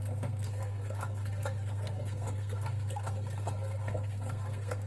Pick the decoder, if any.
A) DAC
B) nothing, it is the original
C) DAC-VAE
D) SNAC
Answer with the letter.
D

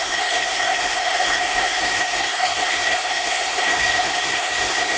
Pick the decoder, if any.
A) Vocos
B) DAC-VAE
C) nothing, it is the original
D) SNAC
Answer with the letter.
D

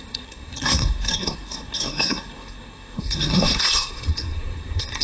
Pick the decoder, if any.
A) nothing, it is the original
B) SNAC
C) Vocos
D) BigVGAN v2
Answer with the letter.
B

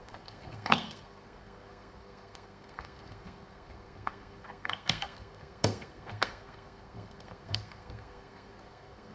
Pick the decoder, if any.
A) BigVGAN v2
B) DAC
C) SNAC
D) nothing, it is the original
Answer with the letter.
C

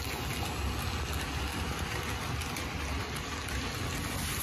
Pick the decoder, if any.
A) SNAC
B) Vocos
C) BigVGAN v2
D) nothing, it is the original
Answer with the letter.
D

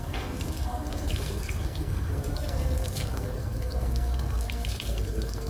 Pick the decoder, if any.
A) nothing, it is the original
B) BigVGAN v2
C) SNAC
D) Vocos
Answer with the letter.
C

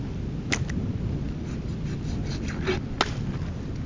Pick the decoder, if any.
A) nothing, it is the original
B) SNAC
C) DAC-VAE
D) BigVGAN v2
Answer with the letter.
A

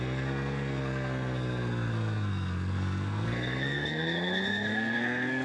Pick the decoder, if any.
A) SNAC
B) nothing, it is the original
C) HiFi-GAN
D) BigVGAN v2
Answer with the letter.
A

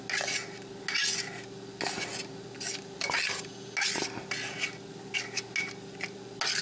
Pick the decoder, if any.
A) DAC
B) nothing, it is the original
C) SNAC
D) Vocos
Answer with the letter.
B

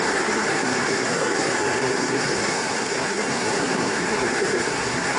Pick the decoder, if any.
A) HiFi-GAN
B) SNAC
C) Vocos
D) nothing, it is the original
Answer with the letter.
B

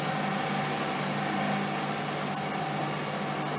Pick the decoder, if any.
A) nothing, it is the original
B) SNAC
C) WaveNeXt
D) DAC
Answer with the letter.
A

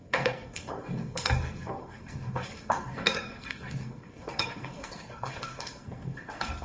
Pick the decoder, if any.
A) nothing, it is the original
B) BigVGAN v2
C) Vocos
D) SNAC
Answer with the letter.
D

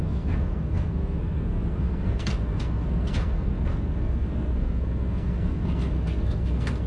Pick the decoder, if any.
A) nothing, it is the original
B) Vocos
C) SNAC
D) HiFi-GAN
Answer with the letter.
C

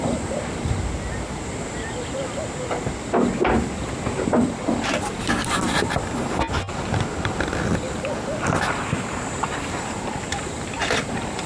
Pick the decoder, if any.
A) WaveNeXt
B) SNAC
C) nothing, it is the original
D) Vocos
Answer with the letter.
C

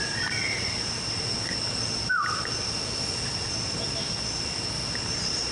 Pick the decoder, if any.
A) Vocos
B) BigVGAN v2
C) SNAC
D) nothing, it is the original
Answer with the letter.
D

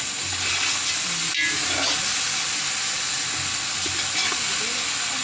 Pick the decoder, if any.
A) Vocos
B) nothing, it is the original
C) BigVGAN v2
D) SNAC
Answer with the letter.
B